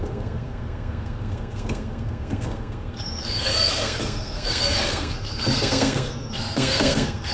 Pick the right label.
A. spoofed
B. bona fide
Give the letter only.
A